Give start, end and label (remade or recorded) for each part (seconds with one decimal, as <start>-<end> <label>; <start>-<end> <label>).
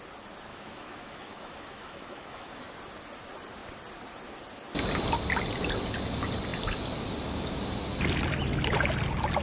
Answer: 0.0-0.5 recorded; 0.5-2.7 remade; 2.7-9.4 recorded